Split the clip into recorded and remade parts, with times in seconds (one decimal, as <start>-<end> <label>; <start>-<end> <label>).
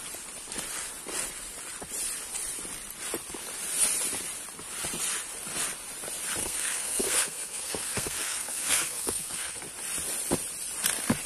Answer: 0.0-6.4 recorded; 6.4-9.6 remade; 9.6-11.3 recorded